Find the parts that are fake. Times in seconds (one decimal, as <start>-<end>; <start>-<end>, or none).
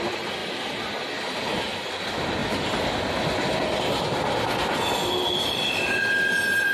none